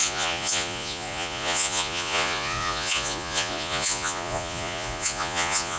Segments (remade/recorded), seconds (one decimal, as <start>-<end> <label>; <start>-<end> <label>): 0.0-5.8 remade